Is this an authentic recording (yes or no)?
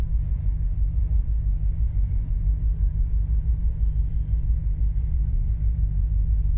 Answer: no